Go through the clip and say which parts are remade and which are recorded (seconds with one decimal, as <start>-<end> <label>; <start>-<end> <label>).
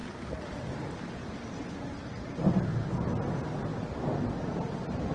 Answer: 0.0-1.6 remade; 1.6-2.7 recorded; 2.7-3.2 remade; 3.2-3.7 recorded; 3.7-4.3 remade; 4.3-5.1 recorded